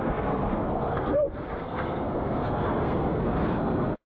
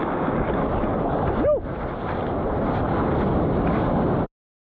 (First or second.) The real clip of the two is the second